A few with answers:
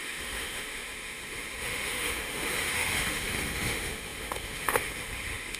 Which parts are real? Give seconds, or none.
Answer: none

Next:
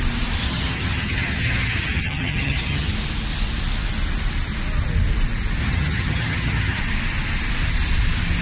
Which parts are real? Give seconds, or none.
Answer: 0.0-0.4; 2.9-5.6; 6.8-8.4